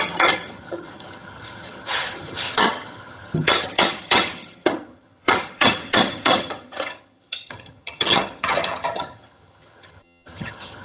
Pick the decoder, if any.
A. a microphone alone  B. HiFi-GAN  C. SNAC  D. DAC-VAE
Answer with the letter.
B